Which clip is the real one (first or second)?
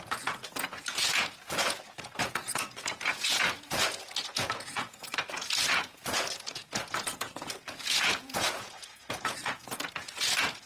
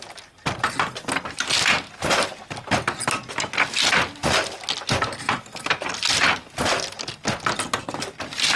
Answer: second